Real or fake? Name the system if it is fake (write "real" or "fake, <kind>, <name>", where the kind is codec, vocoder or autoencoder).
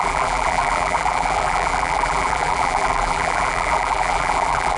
fake, vocoder, BigVGAN v2